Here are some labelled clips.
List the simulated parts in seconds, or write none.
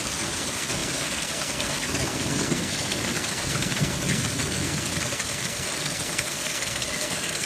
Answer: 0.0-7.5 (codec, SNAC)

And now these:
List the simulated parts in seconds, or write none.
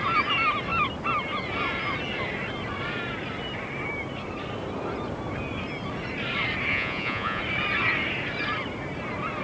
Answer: 6.7-7.4 (vocoder, Vocos)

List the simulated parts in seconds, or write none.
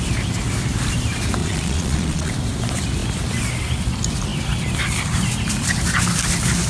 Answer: 1.4-2.3 (vocoder, Vocos)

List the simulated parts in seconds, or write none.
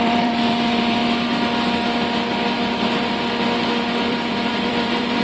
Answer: 0.0-1.0 (vocoder, BigVGAN v2); 4.1-5.2